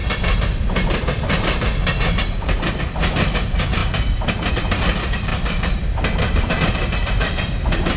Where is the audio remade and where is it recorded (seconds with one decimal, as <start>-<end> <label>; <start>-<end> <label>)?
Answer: 0.0-8.0 remade